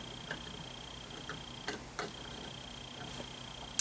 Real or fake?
real